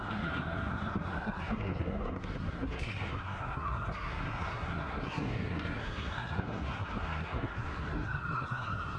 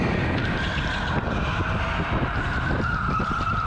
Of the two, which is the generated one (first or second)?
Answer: first